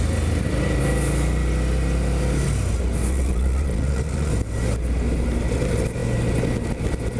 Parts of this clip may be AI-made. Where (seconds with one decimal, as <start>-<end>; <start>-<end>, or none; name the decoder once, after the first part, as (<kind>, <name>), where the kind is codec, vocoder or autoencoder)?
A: 3.1-4.3 (vocoder, Vocos)